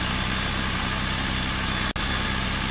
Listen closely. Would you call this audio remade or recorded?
recorded